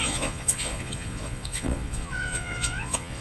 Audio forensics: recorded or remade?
remade